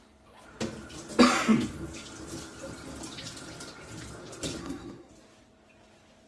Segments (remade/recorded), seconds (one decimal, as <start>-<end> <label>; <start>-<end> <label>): 0.0-4.6 recorded; 4.6-5.1 remade; 5.1-6.3 recorded